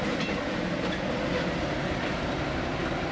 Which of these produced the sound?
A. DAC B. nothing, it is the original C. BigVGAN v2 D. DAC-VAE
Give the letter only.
B